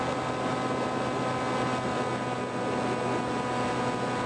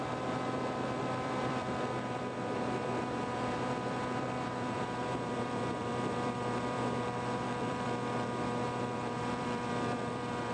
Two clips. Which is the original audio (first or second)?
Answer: first